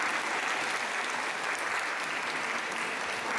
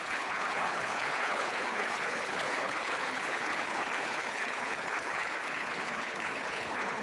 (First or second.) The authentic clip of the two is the first